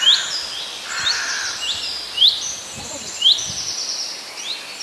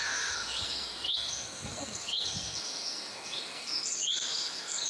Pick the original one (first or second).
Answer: first